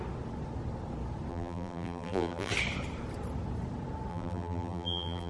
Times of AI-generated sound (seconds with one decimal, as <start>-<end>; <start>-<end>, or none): 1.3-2.5; 4.1-5.3